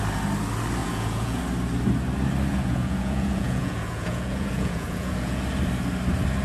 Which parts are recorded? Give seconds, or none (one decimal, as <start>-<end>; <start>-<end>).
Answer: 0.0-0.8; 1.4-2.5; 5.4-6.4